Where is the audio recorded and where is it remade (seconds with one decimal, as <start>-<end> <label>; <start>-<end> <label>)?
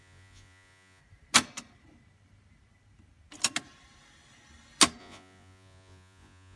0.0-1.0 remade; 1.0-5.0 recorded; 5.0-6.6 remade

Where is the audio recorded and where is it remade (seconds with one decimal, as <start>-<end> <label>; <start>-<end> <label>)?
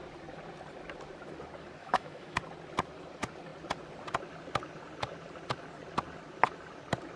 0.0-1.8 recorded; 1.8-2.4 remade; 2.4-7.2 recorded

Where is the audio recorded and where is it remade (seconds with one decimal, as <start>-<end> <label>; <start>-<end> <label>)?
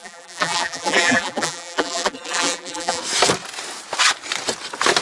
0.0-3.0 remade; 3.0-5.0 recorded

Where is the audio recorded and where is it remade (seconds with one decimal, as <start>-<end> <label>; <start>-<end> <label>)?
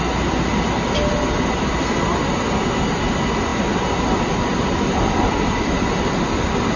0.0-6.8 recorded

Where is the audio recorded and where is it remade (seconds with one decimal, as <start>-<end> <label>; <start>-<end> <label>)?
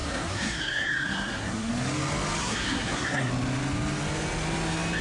0.0-1.7 remade; 1.7-2.4 recorded; 2.4-3.3 remade; 3.3-5.0 recorded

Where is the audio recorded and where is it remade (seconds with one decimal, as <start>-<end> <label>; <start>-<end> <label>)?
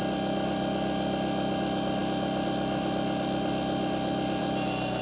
0.0-5.0 recorded